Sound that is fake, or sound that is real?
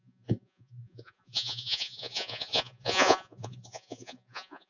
fake